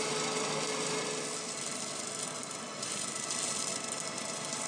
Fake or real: real